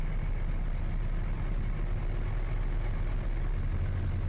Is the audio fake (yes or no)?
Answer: no